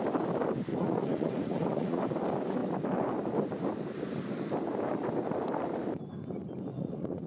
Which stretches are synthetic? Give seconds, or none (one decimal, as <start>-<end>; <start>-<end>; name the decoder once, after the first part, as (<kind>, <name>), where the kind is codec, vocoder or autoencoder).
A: 0.7-2.0 (vocoder, Vocos); 6.7-7.3